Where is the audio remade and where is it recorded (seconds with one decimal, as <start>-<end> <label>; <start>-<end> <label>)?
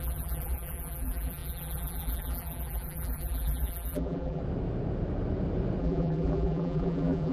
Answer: 0.0-4.4 remade; 4.4-5.8 recorded; 5.8-7.3 remade